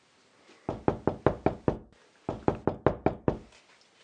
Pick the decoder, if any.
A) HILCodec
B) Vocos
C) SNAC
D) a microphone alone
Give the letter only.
D